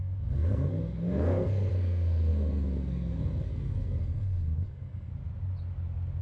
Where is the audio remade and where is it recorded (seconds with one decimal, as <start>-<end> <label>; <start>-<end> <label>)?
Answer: 0.0-5.1 remade; 5.1-6.2 recorded